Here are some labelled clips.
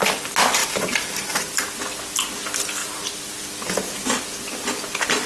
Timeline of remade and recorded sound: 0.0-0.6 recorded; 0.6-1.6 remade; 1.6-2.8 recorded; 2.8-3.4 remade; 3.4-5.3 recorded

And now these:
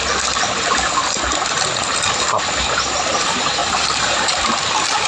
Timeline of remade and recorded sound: 0.0-3.6 recorded; 3.6-4.5 remade; 4.5-5.1 recorded

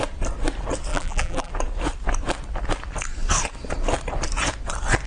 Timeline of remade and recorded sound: 0.0-0.9 recorded; 0.9-1.5 remade; 1.5-5.1 recorded

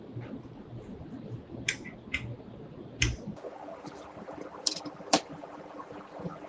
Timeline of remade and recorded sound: 0.0-4.5 recorded; 4.5-5.5 remade; 5.5-6.5 recorded

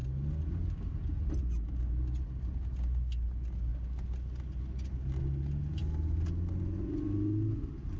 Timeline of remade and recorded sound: 0.0-8.0 recorded

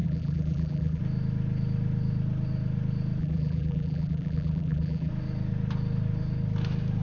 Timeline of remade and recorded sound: 0.0-1.0 remade; 1.0-3.2 recorded; 3.2-5.1 remade; 5.1-7.0 recorded

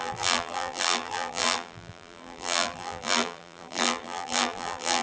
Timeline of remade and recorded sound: 0.0-5.0 remade

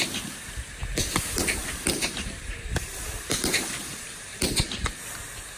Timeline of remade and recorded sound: 0.0-1.6 recorded; 1.6-4.6 remade; 4.6-5.6 recorded